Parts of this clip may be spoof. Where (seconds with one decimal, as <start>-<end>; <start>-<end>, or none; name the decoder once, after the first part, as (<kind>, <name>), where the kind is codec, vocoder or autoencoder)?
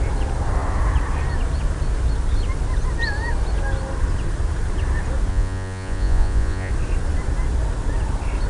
5.3-6.7 (vocoder, Vocos)